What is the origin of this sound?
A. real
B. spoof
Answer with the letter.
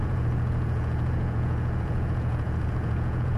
B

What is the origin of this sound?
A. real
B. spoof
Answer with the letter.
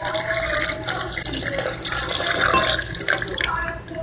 A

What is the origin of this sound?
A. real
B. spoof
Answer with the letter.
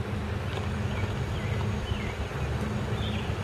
A